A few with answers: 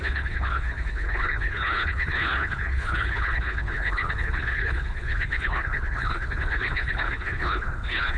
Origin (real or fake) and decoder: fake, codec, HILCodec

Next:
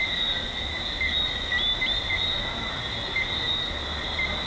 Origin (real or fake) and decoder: real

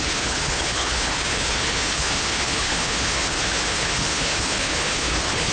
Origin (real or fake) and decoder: fake, codec, HILCodec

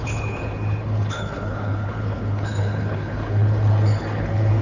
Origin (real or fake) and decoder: fake, codec, HILCodec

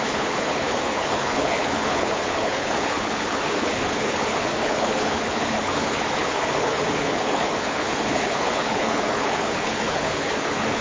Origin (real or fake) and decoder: fake, codec, HILCodec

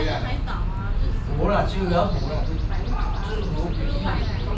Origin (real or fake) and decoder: real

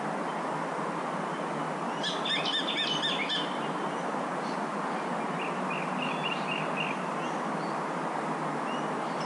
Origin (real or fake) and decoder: real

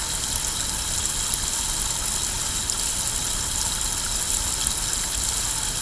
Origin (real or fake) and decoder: real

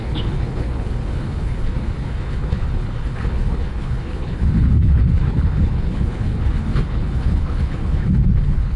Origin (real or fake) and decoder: fake, codec, HILCodec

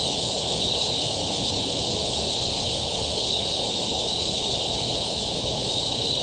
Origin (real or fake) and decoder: fake, codec, HILCodec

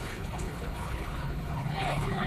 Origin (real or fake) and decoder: fake, codec, HILCodec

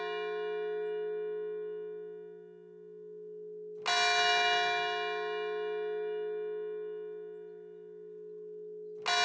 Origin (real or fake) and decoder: real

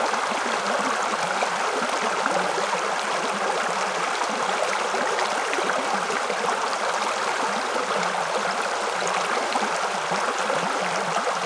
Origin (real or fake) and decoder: real